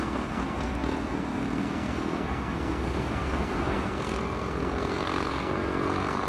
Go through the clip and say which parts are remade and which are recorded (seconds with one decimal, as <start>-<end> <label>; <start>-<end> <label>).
0.0-6.3 remade